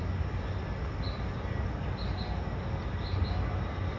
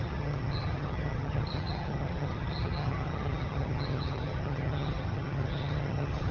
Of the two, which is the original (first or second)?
first